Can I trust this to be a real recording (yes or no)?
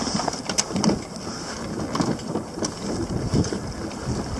yes